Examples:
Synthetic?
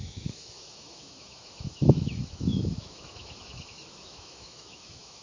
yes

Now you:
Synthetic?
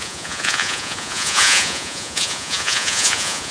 yes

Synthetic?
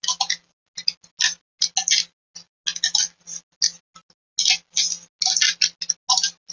no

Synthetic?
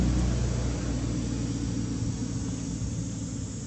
no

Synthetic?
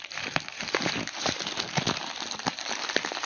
yes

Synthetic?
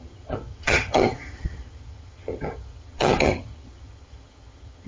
yes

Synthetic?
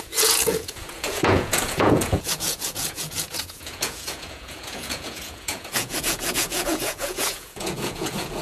yes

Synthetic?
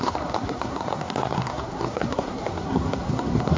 yes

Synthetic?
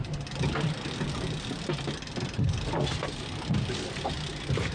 no